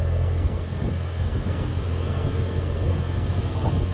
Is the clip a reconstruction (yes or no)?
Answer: yes